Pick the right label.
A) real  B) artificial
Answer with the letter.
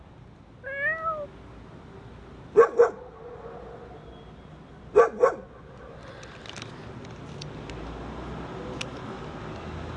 A